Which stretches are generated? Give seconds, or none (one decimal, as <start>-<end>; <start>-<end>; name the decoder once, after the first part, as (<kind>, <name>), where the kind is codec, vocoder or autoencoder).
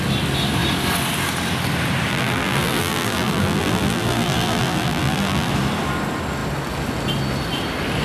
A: 2.1-5.5 (vocoder, BigVGAN v2)